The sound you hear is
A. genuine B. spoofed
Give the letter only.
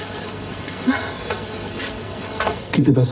B